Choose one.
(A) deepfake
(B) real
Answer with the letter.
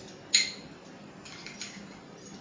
B